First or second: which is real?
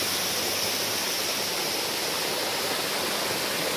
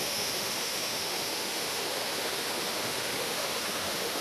first